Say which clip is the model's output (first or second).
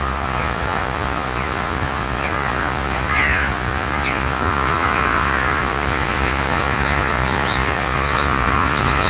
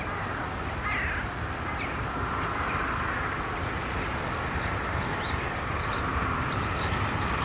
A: first